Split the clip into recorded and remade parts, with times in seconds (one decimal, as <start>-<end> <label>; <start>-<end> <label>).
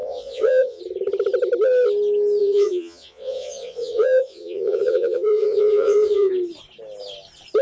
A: 0.0-0.8 remade; 0.8-2.4 recorded; 2.4-6.3 remade; 6.3-7.6 recorded